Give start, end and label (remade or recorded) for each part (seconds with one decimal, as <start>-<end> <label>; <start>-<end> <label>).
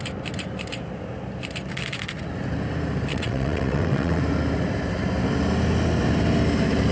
0.0-3.1 recorded; 3.1-4.2 remade; 4.2-6.9 recorded